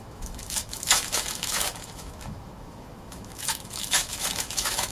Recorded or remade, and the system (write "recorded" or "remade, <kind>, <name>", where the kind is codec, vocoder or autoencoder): remade, autoencoder, DAC-VAE